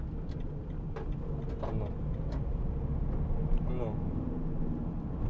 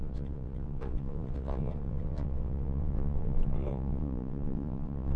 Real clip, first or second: first